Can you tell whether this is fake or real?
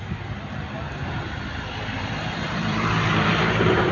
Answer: fake